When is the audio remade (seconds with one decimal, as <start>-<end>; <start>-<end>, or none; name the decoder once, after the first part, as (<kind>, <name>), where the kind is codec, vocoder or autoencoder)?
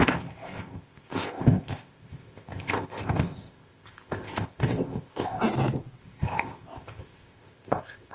0.0-5.4 (codec, ZipCodec); 6.0-8.1